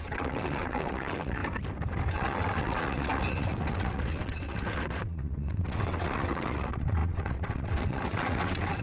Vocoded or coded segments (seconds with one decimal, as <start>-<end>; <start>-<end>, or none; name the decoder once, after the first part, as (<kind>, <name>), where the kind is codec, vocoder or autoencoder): 0.0-1.4 (vocoder, WaveNeXt); 2.1-8.8